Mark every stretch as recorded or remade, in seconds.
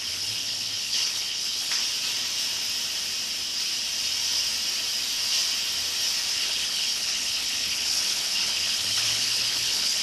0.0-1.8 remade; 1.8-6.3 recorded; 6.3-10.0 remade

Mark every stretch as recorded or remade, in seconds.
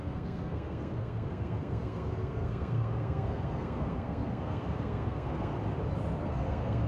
0.0-5.5 remade; 5.5-6.2 recorded; 6.2-6.9 remade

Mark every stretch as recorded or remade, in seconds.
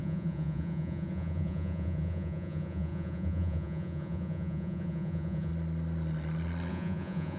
0.0-5.5 remade; 5.5-6.7 recorded; 6.7-7.4 remade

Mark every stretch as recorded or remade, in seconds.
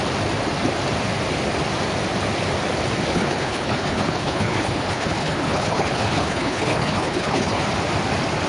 0.0-3.1 recorded; 3.1-7.6 remade; 7.6-8.5 recorded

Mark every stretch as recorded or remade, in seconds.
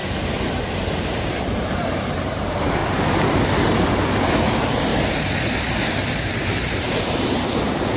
0.0-1.0 recorded; 1.0-2.8 remade; 2.8-4.4 recorded; 4.4-4.9 remade; 4.9-6.5 recorded; 6.5-8.0 remade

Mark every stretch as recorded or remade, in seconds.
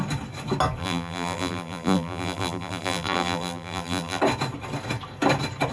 0.0-0.8 recorded; 0.8-4.2 remade; 4.2-5.7 recorded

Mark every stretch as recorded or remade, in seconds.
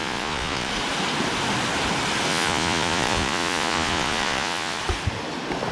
0.0-0.7 remade; 0.7-2.3 recorded; 2.3-4.8 remade; 4.8-5.7 recorded